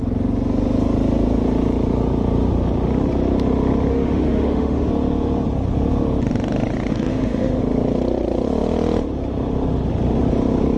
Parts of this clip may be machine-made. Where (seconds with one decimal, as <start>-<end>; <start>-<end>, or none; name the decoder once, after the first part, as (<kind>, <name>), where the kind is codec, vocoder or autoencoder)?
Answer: 3.9-4.9 (autoencoder, DAC-VAE); 6.9-7.6

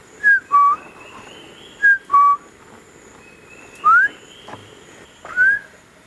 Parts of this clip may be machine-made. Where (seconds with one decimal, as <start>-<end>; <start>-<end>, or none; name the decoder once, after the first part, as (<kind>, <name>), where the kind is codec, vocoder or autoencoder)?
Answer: none